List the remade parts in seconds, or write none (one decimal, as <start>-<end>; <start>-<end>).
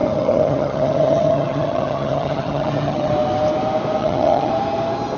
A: 0.0-3.1; 4.0-4.5